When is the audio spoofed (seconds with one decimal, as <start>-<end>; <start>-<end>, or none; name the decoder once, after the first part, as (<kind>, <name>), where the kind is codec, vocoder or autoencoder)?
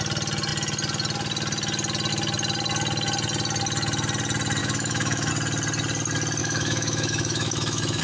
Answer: 4.6-5.3 (autoencoder, DAC-VAE); 6.4-8.0